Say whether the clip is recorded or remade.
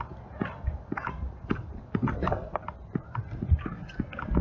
recorded